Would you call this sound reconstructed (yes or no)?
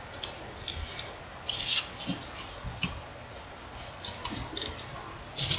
no